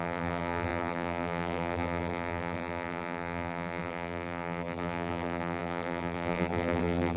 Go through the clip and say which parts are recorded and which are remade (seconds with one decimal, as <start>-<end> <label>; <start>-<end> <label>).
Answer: 0.0-7.2 remade